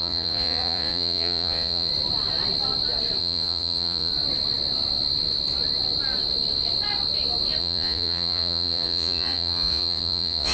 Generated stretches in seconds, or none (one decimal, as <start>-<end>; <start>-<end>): 0.0-1.9; 3.2-4.1; 7.6-10.5